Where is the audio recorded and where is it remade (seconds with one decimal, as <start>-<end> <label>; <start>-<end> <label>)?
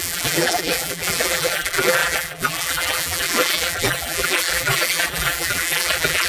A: 0.0-6.3 remade